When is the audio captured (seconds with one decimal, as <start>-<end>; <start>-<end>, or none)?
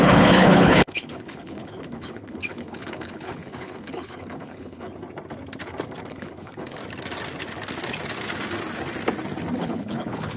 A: 4.9-6.1; 6.8-9.6